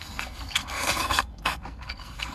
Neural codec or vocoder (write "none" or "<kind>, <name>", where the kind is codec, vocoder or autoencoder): codec, SNAC